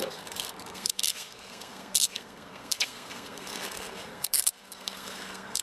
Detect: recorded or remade remade